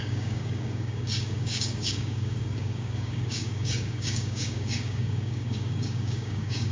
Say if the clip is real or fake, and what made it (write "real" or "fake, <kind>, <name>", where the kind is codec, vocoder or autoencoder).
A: fake, codec, DAC